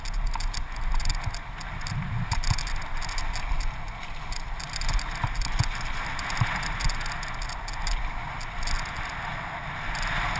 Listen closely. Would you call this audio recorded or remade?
recorded